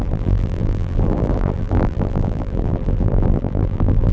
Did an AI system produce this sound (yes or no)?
yes